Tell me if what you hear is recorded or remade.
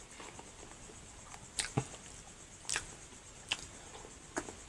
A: recorded